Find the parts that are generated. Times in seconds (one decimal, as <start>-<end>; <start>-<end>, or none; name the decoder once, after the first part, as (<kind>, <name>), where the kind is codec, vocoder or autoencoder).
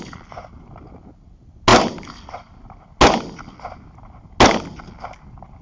none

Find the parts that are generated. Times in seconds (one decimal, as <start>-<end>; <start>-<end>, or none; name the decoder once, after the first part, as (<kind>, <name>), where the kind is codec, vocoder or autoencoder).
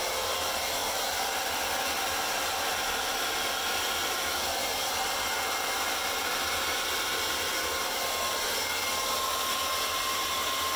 none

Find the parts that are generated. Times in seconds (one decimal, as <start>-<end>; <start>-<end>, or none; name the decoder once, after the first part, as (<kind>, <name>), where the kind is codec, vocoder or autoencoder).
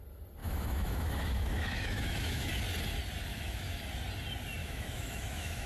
0.4-2.5 (autoencoder, DAC-VAE); 3.3-3.8; 4.6-5.7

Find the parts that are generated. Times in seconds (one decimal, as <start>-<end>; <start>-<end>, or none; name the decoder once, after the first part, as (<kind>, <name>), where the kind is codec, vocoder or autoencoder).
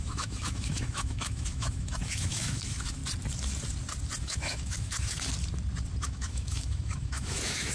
0.0-3.0 (autoencoder, DAC-VAE); 4.2-5.3; 6.0-7.7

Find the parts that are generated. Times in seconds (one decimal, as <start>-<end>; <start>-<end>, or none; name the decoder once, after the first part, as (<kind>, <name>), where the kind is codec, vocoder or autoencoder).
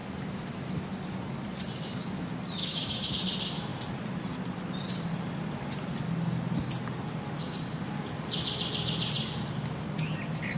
2.6-3.1 (autoencoder, DAC-VAE)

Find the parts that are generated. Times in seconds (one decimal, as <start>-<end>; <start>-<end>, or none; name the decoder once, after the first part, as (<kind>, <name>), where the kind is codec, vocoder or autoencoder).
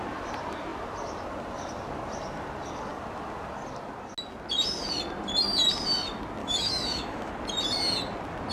6.4-7.3 (autoencoder, DAC-VAE)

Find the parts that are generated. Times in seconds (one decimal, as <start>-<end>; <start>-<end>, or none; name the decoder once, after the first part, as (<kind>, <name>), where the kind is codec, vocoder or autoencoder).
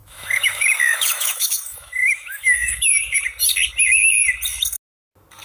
0.0-3.2 (autoencoder, DAC-VAE)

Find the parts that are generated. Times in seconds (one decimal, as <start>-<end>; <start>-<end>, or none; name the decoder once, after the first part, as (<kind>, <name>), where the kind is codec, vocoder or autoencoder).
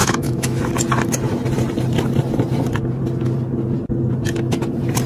0.0-0.7 (autoencoder, DAC-VAE)